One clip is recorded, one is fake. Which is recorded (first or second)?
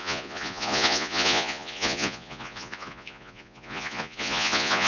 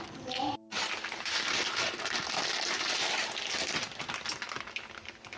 second